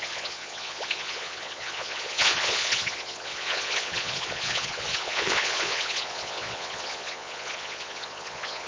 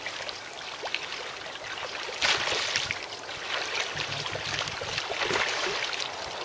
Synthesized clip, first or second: first